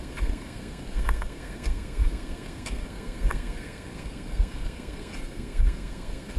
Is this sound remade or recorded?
remade